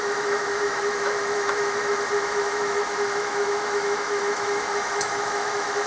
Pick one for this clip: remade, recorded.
remade